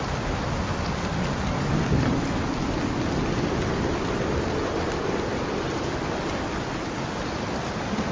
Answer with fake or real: real